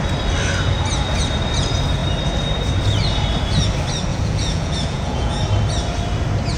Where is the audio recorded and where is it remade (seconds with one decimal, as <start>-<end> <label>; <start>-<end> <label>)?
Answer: 0.0-4.1 recorded; 4.1-5.4 remade; 5.4-6.6 recorded